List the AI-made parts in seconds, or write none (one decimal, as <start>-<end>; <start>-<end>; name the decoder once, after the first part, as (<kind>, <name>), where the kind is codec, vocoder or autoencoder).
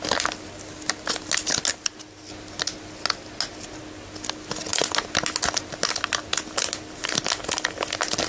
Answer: none